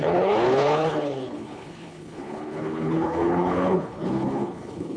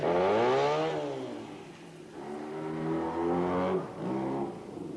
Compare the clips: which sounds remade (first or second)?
first